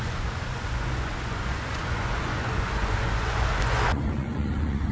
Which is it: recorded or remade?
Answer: remade